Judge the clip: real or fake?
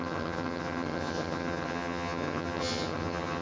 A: fake